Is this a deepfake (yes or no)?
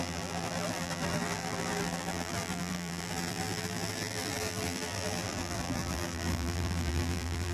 yes